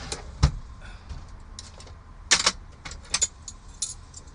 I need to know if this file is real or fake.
real